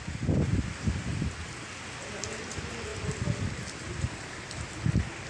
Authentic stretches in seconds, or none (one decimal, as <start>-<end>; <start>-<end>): 0.0-5.3